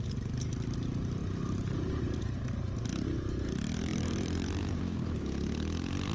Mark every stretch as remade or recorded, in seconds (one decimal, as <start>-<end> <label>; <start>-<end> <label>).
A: 0.0-1.2 recorded; 1.2-2.6 remade; 2.6-3.9 recorded; 3.9-4.8 remade; 4.8-6.1 recorded